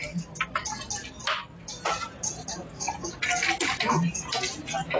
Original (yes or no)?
yes